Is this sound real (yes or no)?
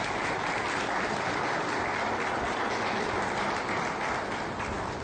yes